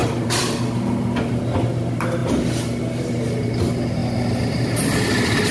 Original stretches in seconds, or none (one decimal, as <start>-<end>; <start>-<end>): 1.3-2.2; 3.5-4.0